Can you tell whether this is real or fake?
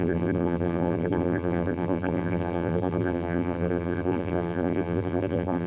fake